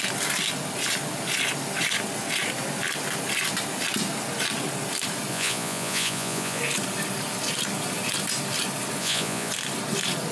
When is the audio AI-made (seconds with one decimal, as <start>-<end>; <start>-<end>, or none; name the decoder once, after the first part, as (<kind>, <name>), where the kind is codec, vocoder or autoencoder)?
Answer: 5.3-6.6 (vocoder, Vocos); 9.0-9.5